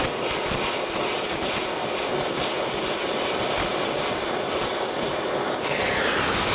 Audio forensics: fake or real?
real